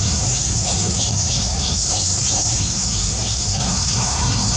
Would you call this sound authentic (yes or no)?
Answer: no